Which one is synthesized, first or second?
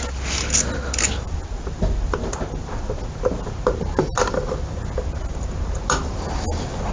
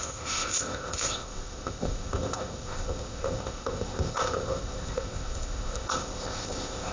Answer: second